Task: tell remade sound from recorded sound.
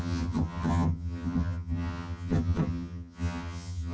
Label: remade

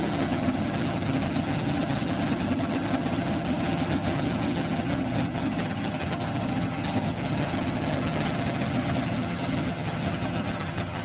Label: remade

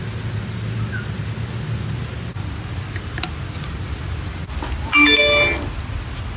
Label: recorded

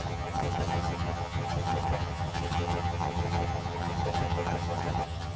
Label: remade